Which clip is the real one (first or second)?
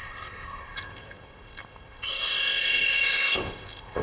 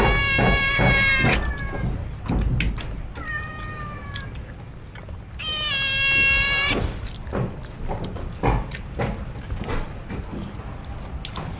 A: second